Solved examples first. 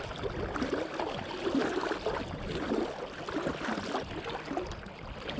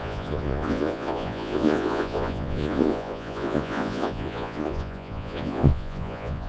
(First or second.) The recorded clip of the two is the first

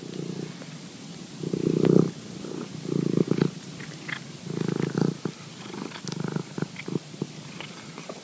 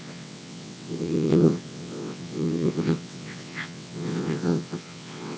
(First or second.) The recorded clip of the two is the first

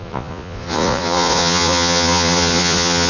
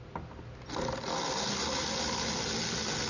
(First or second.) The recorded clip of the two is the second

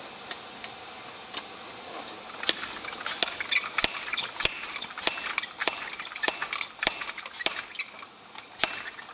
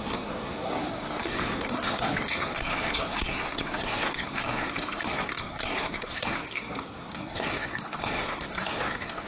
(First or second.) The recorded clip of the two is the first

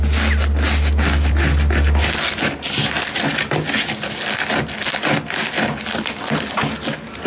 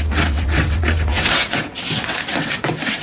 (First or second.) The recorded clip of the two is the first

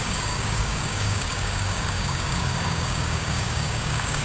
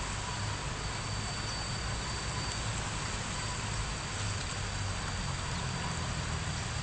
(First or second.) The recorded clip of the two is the second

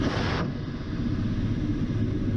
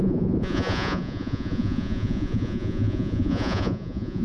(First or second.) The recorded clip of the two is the first